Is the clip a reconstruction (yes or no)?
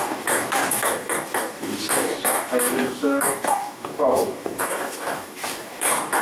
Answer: yes